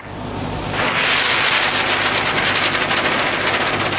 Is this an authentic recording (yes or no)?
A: yes